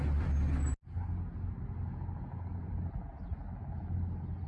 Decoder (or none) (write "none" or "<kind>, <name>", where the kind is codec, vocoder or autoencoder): none